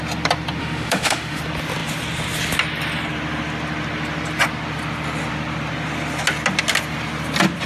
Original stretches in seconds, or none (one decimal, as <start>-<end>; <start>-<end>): 0.0-0.6; 1.4-7.7